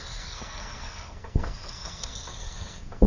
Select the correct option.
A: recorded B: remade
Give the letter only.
B